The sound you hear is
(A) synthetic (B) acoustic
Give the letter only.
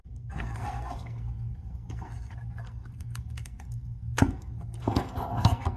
A